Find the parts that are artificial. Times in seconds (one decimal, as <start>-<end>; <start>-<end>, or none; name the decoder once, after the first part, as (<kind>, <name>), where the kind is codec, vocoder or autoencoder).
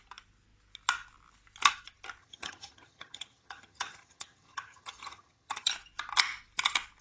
2.2-5.7 (vocoder, HiFi-GAN)